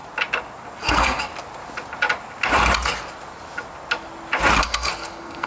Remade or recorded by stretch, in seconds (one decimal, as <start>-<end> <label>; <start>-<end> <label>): 0.0-0.8 recorded; 0.8-1.3 remade; 1.3-4.6 recorded; 4.6-5.5 remade